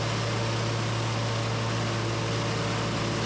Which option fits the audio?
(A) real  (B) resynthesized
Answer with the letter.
A